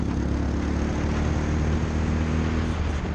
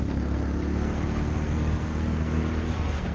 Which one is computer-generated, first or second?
second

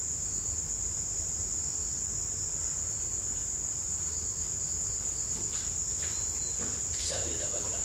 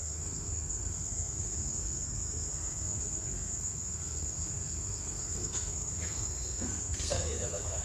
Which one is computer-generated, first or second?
second